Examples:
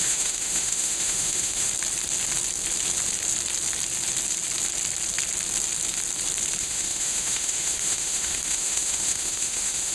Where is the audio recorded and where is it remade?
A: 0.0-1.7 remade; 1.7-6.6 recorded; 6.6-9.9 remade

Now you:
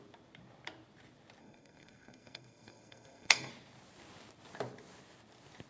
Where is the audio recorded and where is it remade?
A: 0.0-1.4 recorded; 1.4-3.5 remade; 3.5-5.7 recorded

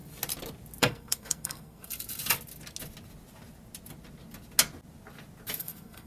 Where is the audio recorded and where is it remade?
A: 0.0-0.8 recorded; 0.8-1.9 remade; 1.9-5.6 recorded; 5.6-6.1 remade

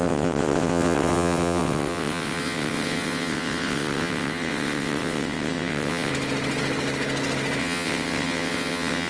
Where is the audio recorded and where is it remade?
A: 0.0-6.1 remade; 6.1-7.6 recorded; 7.6-9.1 remade